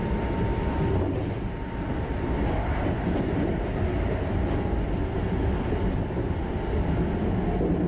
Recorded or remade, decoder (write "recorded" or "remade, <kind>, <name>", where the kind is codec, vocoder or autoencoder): recorded